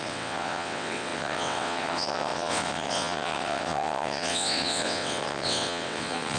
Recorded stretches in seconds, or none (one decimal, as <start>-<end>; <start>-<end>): none